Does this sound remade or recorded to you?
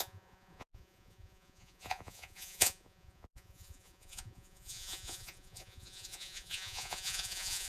remade